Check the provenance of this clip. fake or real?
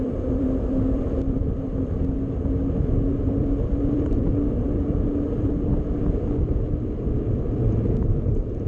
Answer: fake